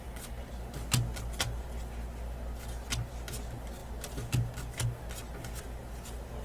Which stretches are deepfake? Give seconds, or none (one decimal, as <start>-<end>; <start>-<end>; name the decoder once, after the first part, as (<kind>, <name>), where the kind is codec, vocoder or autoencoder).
none